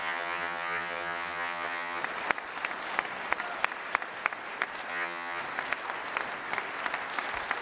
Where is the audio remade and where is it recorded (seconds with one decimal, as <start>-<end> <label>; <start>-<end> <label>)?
0.0-2.0 remade; 2.0-4.9 recorded; 4.9-5.4 remade; 5.4-7.6 recorded